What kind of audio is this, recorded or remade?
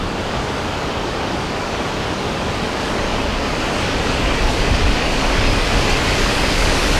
remade